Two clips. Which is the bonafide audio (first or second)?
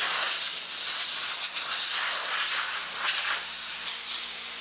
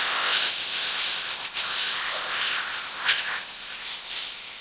first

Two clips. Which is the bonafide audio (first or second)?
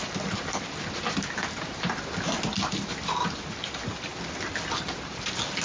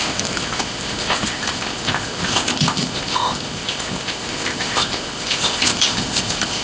first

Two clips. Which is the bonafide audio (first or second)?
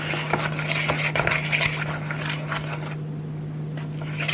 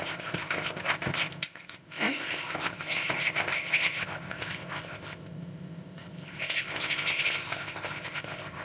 first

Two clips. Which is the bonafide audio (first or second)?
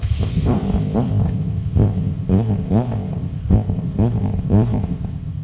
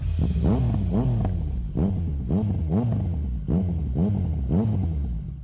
second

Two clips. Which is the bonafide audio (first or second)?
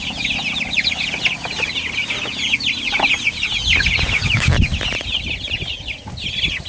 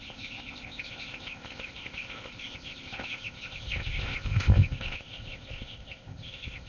first